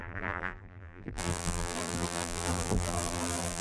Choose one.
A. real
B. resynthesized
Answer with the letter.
B